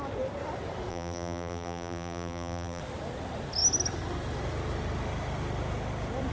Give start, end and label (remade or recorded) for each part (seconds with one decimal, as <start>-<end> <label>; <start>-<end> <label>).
0.0-0.9 recorded; 0.9-2.8 remade; 2.8-6.3 recorded